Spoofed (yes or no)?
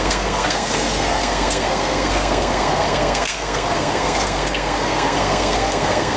yes